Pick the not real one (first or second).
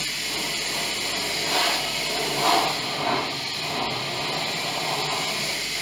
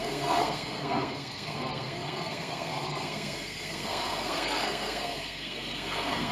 second